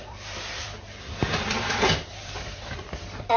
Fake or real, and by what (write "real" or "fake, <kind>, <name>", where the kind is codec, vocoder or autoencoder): fake, vocoder, BigVGAN v2